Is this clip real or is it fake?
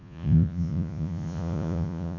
fake